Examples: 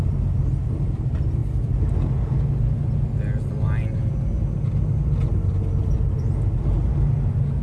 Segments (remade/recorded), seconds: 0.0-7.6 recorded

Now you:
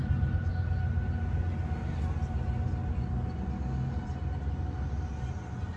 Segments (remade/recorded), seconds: 0.0-5.8 recorded

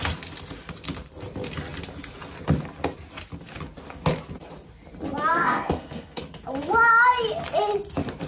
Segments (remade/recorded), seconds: 0.0-5.3 recorded; 5.3-6.2 remade; 6.2-8.3 recorded

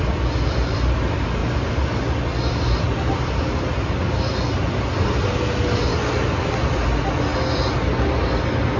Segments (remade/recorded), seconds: 0.0-8.8 recorded

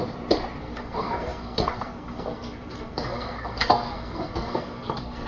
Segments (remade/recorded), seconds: 0.0-0.6 recorded; 0.6-5.3 remade

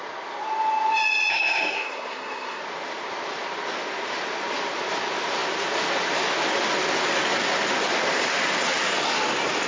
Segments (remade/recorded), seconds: 0.0-1.3 recorded; 1.3-2.6 remade; 2.6-9.7 recorded

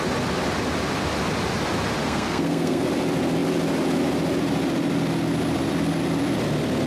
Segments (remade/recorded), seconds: 0.0-2.0 recorded; 2.0-2.9 remade; 2.9-6.9 recorded